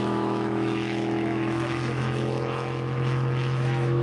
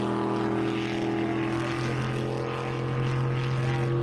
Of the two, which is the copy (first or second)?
first